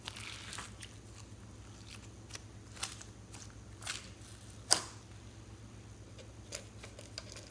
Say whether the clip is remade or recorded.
recorded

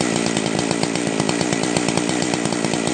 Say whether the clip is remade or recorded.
remade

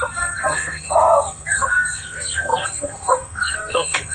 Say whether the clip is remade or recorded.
remade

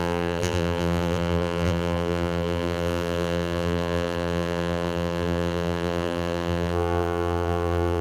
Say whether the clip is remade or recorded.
remade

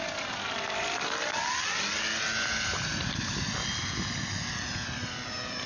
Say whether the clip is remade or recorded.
recorded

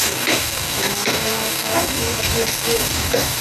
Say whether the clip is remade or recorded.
remade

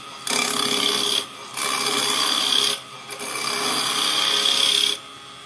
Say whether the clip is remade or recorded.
recorded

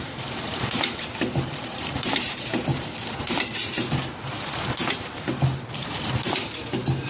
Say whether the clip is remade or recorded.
remade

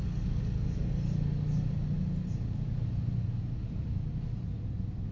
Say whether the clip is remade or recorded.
recorded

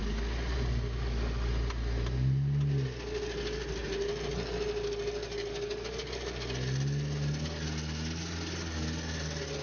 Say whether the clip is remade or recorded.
recorded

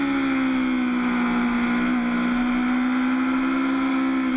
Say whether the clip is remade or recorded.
recorded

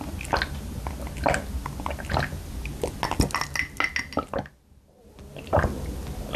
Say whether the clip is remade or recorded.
recorded